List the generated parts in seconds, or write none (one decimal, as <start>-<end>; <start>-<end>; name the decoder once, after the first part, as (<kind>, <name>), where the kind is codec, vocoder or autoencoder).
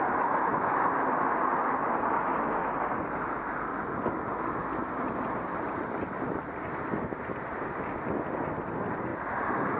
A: 4.8-6.0 (vocoder, BigVGAN v2); 9.1-9.8